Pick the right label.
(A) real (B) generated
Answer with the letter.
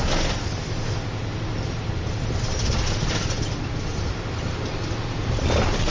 A